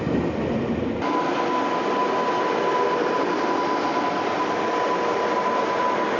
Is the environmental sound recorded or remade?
recorded